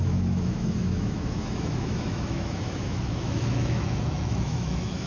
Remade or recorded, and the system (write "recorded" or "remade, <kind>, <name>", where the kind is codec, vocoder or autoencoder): remade, autoencoder, DAC-VAE